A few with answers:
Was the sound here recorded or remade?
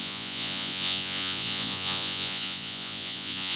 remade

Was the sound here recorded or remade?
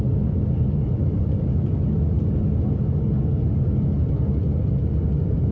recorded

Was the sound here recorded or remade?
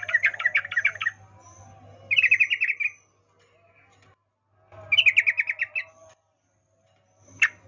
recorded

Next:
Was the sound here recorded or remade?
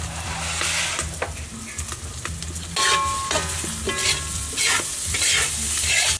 recorded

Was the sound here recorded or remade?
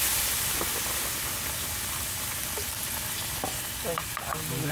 recorded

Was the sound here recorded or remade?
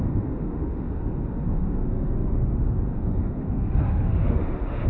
remade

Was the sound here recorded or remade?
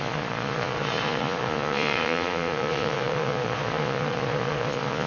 remade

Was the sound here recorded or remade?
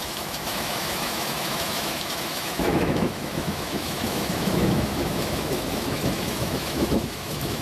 remade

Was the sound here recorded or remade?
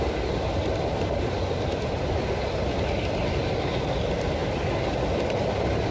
recorded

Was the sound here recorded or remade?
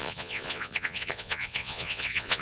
remade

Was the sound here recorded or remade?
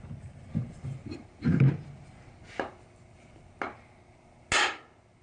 recorded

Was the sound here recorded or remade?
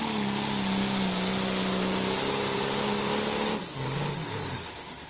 recorded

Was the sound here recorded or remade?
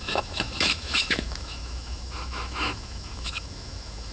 remade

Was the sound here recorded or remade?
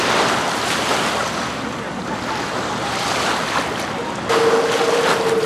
recorded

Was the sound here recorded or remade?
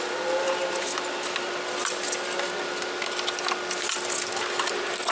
recorded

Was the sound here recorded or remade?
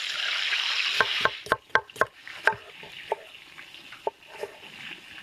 recorded